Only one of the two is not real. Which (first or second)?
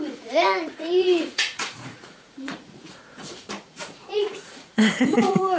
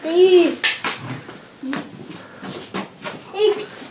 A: first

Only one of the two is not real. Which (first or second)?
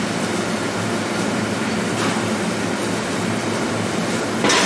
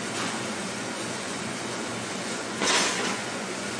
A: second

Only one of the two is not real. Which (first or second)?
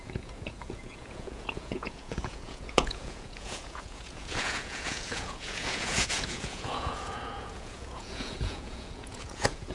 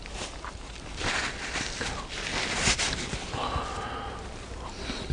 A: first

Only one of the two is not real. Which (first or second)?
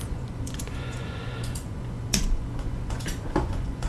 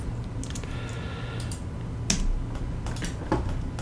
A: first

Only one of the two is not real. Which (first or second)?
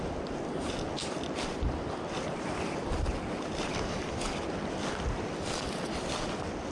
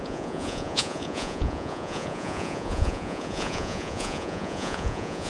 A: second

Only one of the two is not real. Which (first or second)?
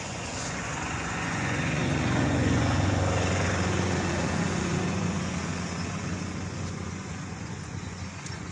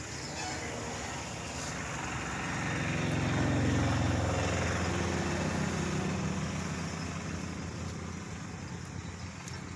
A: first